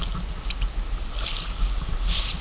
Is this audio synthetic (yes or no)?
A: no